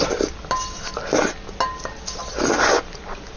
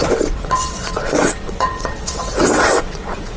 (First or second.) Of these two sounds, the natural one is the first